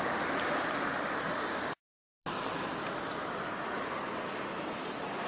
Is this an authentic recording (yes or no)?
yes